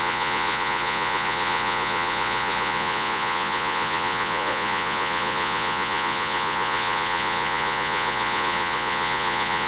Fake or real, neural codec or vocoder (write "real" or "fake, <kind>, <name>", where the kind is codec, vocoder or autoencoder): fake, vocoder, Vocos